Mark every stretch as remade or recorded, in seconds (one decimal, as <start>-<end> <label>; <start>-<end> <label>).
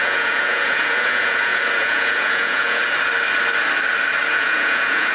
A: 0.0-2.8 remade; 2.8-4.3 recorded; 4.3-5.1 remade